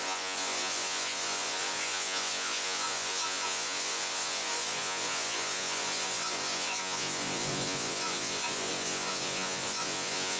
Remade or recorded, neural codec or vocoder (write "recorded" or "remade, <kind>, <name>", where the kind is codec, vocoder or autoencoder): remade, vocoder, Vocos